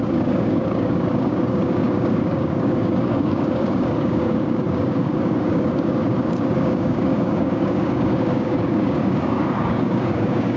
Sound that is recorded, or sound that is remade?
remade